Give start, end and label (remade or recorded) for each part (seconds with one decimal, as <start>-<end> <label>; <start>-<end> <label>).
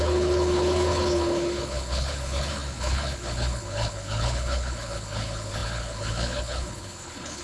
0.0-7.4 remade